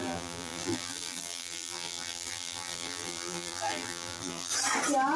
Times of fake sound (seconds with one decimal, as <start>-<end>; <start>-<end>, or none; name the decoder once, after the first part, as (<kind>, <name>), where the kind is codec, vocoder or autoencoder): 0.0-4.5 (vocoder, BigVGAN v2)